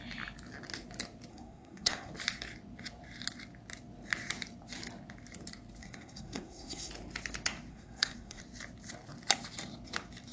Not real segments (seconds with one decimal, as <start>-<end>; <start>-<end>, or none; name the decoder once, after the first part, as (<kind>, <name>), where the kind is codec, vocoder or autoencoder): 1.3-2.1 (codec, SNAC); 5.8-6.9; 7.7-8.4